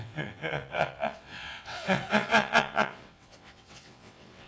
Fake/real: fake